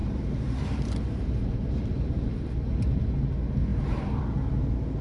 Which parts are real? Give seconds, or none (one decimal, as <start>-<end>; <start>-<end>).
3.0-3.7; 4.2-5.0